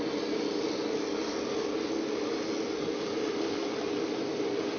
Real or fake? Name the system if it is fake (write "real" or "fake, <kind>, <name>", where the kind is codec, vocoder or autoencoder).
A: real